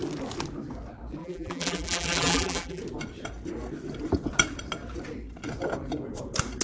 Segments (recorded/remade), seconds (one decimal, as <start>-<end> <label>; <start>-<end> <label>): 0.0-1.2 recorded; 1.2-2.8 remade; 2.8-6.6 recorded